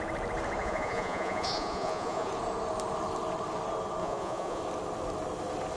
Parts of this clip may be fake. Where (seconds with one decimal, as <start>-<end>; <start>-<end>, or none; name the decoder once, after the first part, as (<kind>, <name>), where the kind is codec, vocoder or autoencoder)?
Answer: 0.6-2.3 (vocoder, Vocos); 4.0-4.6